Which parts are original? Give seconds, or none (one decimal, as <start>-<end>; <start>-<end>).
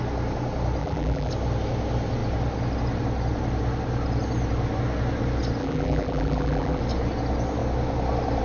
0.0-0.8; 1.3-5.6; 6.8-8.4